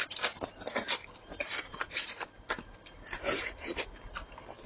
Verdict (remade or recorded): recorded